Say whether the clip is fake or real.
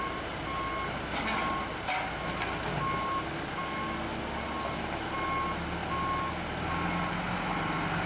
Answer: real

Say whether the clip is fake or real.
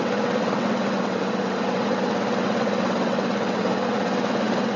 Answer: fake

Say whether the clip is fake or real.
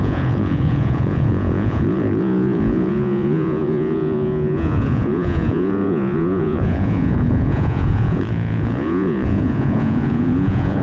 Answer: fake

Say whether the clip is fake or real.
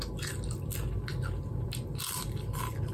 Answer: real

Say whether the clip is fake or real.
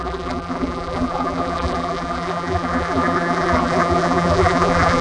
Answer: fake